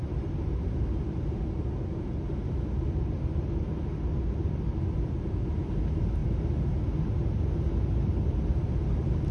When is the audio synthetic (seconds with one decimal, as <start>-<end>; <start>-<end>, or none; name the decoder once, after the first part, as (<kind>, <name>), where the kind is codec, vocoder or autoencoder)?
none